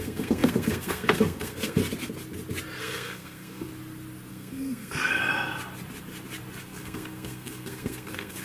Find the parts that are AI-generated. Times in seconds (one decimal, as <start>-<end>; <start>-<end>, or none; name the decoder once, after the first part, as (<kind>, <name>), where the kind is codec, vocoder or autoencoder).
0.0-1.8 (codec, SNAC); 2.8-3.7; 4.3-5.2; 6.6-8.4